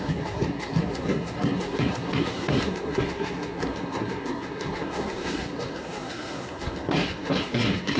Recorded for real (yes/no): no